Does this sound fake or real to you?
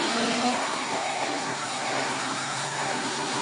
fake